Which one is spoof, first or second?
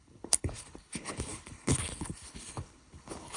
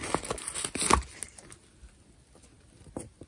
first